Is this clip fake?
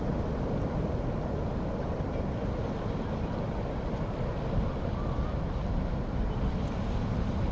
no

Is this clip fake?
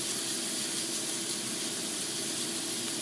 no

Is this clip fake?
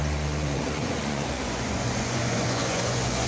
yes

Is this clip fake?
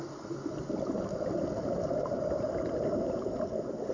no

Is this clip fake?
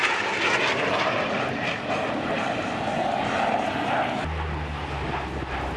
no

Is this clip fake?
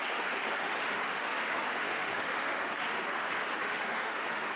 yes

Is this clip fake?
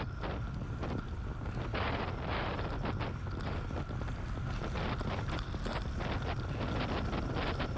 no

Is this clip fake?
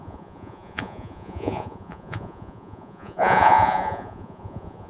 yes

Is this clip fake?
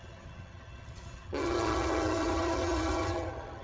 yes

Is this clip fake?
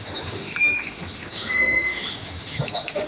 yes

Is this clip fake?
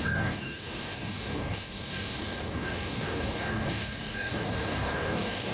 yes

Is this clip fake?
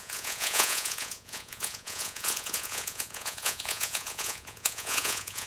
yes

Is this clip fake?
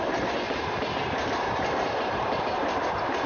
yes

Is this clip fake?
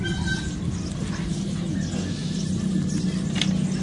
no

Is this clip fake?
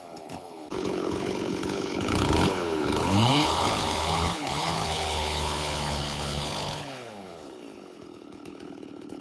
yes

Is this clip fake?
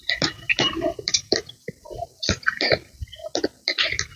no